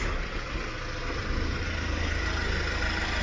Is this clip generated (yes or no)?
no